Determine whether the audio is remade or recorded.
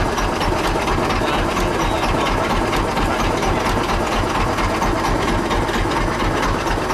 recorded